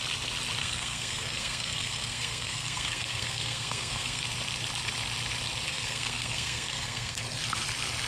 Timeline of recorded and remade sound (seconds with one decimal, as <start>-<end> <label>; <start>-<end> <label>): 0.0-0.6 recorded; 0.6-4.2 remade; 4.2-5.7 recorded; 5.7-7.2 remade; 7.2-8.1 recorded